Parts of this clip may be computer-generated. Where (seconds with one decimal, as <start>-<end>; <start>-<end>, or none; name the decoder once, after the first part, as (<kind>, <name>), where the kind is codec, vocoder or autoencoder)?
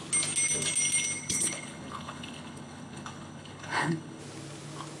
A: 1.2-4.2 (codec, HILCodec)